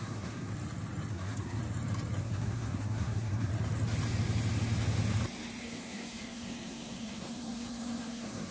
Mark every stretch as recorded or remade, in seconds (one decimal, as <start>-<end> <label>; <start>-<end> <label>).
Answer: 0.0-0.5 remade; 0.5-1.1 recorded; 1.1-1.6 remade; 1.6-2.2 recorded; 2.2-3.5 remade; 3.5-5.6 recorded; 5.6-8.5 remade